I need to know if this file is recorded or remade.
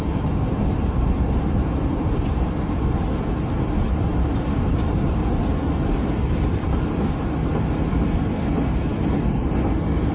remade